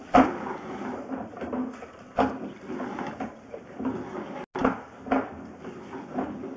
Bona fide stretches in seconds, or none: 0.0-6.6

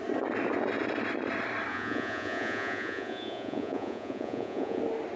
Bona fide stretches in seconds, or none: 0.0-1.7; 4.8-5.2

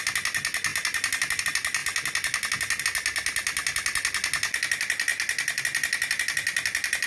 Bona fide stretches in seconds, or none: 0.0-7.1

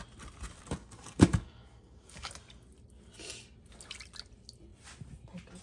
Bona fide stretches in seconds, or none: 0.0-0.8; 2.3-5.6